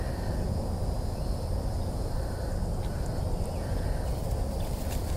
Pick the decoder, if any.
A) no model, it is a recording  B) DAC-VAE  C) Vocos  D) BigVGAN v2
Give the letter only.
A